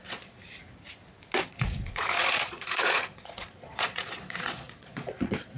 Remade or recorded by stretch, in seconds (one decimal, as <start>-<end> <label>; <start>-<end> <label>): 0.0-0.4 remade; 0.4-1.5 recorded; 1.5-5.6 remade